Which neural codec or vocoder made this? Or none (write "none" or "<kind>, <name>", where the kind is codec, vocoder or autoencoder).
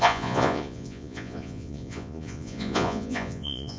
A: vocoder, Vocos